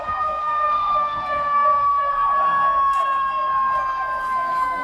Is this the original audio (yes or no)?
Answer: no